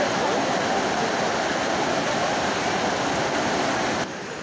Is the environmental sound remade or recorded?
recorded